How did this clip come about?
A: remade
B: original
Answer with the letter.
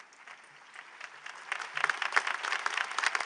B